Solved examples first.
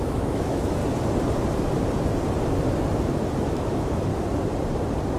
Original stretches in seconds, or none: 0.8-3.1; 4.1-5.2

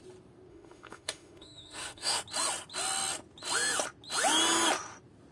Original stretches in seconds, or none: 0.0-0.5; 2.2-5.3